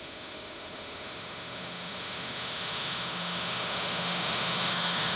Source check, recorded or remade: remade